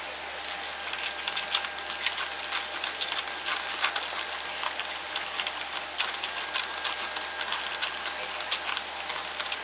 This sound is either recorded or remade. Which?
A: recorded